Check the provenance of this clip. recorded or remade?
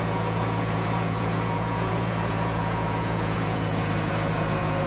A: remade